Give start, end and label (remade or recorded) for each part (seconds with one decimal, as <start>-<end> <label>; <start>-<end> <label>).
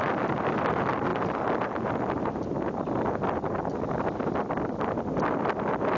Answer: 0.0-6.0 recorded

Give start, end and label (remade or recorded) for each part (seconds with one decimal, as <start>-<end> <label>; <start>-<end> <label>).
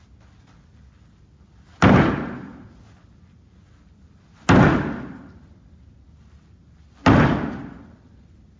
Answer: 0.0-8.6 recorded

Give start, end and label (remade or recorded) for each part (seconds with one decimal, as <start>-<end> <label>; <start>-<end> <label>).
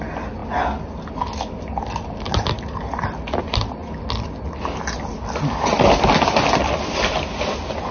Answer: 0.0-7.9 recorded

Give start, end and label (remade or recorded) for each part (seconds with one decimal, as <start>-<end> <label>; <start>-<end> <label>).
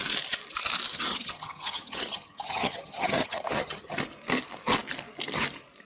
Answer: 0.0-0.9 recorded; 0.9-4.0 remade; 4.0-5.8 recorded